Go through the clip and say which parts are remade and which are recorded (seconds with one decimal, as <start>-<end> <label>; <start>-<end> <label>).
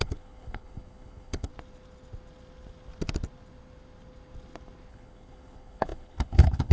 0.0-1.5 remade; 1.5-4.9 recorded; 4.9-6.7 remade